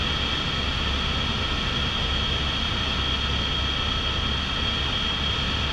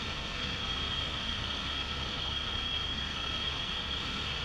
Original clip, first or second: first